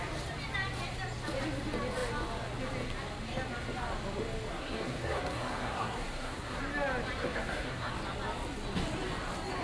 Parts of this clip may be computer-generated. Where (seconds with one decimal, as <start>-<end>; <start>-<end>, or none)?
4.5-6.6; 7.2-7.9